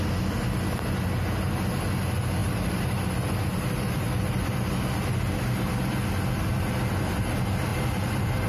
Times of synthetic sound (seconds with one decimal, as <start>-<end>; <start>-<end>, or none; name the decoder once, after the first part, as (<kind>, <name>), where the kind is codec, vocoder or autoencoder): 2.4-4.7 (vocoder, BigVGAN v2); 7.7-8.5